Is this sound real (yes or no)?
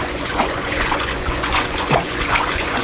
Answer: no